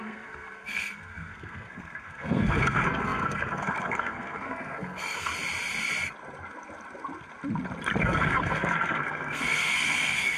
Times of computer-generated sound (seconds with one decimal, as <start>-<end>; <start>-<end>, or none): 0.0-5.3; 8.0-10.4

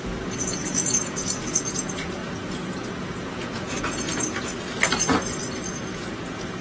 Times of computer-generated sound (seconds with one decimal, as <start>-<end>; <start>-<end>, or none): 0.0-4.5; 5.7-6.6